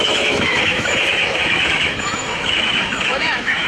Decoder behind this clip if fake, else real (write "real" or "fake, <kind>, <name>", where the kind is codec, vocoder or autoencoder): fake, autoencoder, DAC-VAE